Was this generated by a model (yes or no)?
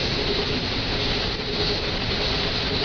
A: no